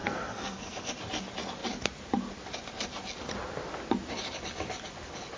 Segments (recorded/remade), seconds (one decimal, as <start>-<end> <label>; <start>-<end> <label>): 0.0-0.9 remade; 0.9-5.4 recorded